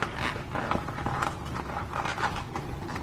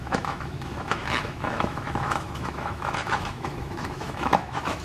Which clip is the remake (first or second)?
second